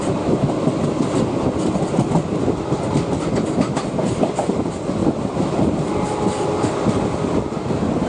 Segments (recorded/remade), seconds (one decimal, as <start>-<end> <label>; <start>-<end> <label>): 0.0-8.1 recorded